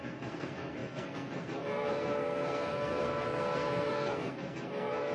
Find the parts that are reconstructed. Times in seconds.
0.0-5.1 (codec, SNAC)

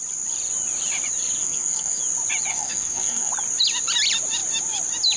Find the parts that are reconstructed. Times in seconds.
1.4-2.0 (codec, SNAC); 2.5-3.3

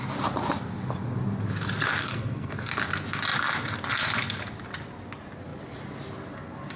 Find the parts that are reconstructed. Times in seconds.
2.0-2.7 (codec, SNAC)

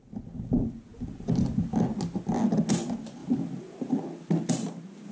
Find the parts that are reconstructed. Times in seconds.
none